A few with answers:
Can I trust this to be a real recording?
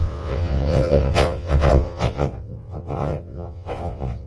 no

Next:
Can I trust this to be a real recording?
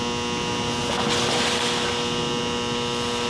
yes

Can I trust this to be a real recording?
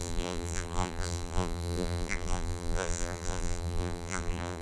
no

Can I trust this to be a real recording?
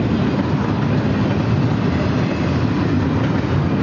yes